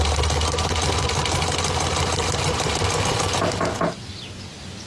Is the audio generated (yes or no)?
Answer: no